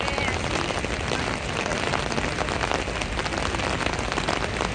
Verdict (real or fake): real